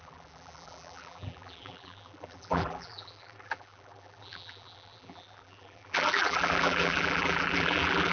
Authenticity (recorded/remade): remade